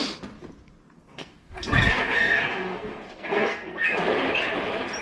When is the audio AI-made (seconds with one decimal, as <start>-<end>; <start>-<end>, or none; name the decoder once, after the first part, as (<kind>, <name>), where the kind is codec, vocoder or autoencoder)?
1.0-4.0 (codec, SNAC)